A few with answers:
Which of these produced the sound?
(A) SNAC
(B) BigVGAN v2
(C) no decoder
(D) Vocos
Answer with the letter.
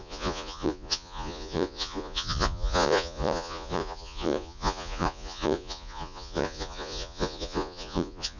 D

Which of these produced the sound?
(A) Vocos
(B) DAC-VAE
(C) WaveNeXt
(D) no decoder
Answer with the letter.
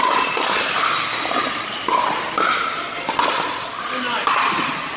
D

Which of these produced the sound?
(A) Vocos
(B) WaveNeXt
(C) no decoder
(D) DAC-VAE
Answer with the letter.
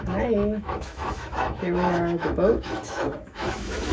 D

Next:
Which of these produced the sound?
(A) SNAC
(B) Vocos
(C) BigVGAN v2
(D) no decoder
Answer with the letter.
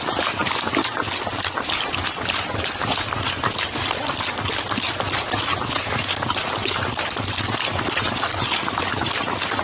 D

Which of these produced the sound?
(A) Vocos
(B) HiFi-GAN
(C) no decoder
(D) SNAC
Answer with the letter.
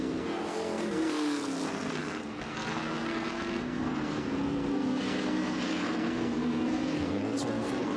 D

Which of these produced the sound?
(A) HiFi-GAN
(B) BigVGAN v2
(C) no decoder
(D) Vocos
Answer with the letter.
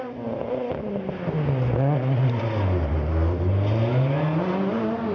C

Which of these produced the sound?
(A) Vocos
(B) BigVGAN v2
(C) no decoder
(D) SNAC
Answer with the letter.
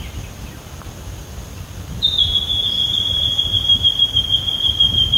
B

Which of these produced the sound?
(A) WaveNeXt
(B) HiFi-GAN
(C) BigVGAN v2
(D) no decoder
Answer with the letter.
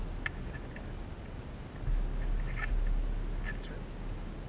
D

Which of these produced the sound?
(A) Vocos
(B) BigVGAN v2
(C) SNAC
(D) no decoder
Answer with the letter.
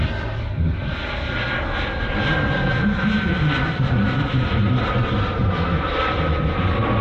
D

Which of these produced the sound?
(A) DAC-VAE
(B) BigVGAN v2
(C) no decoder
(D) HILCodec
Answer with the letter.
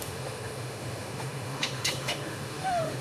A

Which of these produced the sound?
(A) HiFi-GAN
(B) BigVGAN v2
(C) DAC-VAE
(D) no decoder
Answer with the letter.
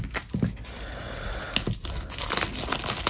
D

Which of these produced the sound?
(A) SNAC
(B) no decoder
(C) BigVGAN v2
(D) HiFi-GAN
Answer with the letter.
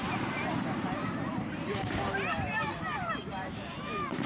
C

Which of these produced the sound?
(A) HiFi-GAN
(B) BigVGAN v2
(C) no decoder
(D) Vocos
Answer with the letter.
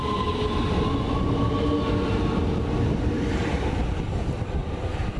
C